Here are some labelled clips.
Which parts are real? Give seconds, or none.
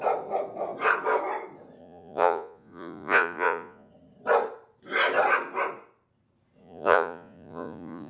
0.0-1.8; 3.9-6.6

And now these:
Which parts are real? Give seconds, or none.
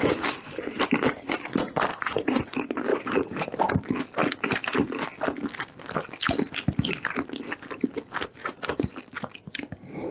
0.0-1.9; 2.4-2.9; 3.6-8.4; 8.9-10.1